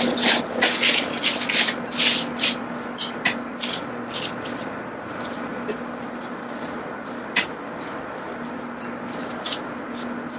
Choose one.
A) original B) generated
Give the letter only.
A